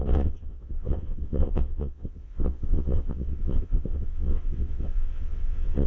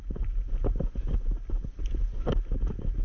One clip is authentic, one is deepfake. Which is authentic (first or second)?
second